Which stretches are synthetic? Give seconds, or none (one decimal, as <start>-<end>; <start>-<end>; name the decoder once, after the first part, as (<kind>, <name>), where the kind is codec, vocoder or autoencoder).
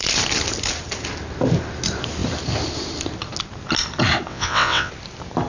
4.3-4.9 (vocoder, WaveNeXt)